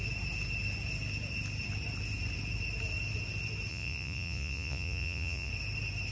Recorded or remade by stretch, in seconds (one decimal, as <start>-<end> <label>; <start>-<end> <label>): 0.0-3.7 recorded; 3.7-5.5 remade; 5.5-6.1 recorded

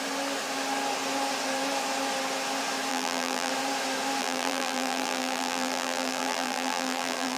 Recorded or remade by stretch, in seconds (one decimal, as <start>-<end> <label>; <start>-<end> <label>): 0.0-2.9 recorded; 2.9-3.5 remade; 3.5-4.2 recorded; 4.2-7.4 remade

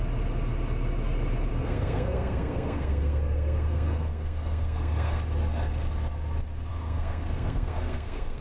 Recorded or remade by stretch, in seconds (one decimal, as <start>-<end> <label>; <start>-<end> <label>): 0.0-1.5 recorded; 1.5-5.2 remade; 5.2-6.7 recorded; 6.7-8.4 remade

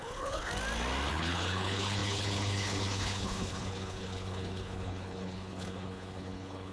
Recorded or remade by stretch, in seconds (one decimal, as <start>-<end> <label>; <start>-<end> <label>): 0.0-0.5 remade; 0.5-1.1 recorded; 1.1-6.7 remade

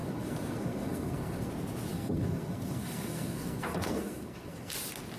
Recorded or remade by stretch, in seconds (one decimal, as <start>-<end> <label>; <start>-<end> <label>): 0.0-1.5 remade; 1.5-1.9 recorded; 1.9-4.7 remade; 4.7-5.2 recorded

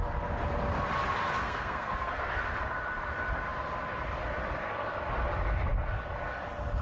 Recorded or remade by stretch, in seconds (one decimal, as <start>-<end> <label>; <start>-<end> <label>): 0.0-1.4 recorded; 1.4-2.3 remade; 2.3-6.8 recorded